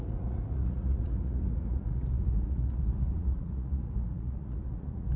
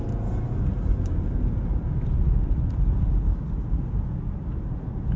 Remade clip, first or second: first